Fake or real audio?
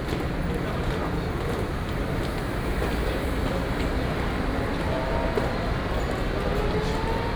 real